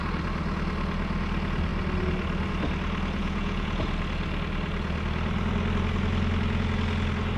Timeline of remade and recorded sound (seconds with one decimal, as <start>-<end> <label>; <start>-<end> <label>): 0.0-3.2 recorded; 3.2-3.8 remade; 3.8-7.4 recorded